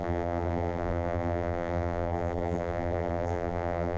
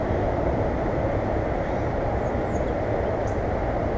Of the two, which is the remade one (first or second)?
first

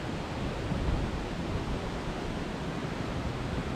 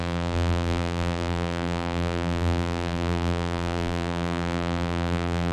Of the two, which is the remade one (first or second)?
second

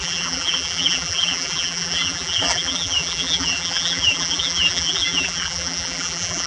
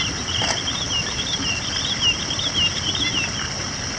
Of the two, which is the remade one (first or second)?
first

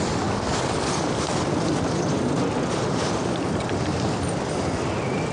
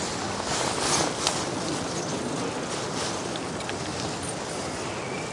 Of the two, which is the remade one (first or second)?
first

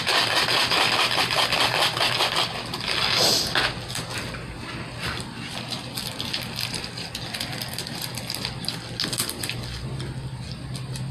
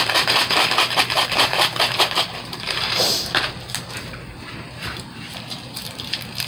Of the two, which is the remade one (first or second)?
second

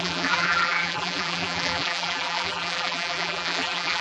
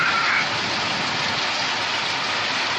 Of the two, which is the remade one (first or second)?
first